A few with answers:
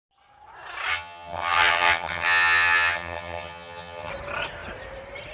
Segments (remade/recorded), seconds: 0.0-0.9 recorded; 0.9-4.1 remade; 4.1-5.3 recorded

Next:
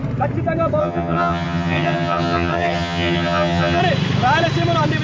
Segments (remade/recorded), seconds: 0.0-0.8 recorded; 0.8-3.8 remade; 3.8-5.0 recorded

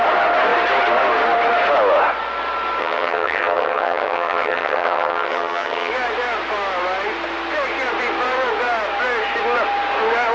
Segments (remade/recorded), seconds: 0.0-2.8 recorded; 2.8-5.9 remade; 5.9-10.3 recorded

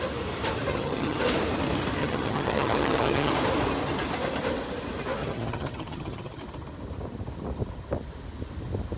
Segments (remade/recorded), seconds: 0.0-0.7 recorded; 0.7-1.2 remade; 1.2-2.0 recorded; 2.0-3.3 remade; 3.3-5.2 recorded; 5.2-6.4 remade; 6.4-9.0 recorded

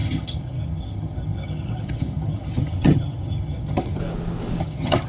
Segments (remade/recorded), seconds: 0.0-4.0 remade; 4.0-4.6 recorded; 4.6-5.1 remade

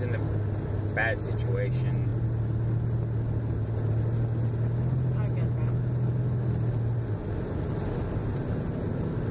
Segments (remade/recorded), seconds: 0.0-9.3 recorded

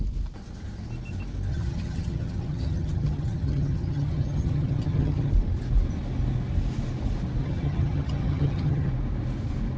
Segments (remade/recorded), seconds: 0.0-1.5 recorded; 1.5-5.3 remade; 5.3-7.4 recorded; 7.4-8.9 remade; 8.9-9.8 recorded

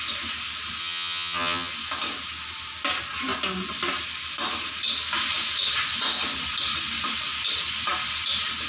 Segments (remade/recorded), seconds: 0.0-0.8 recorded; 0.8-1.7 remade; 1.7-8.7 recorded